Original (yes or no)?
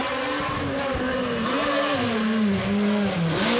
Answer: yes